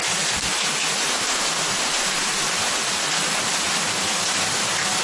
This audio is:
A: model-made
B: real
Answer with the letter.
B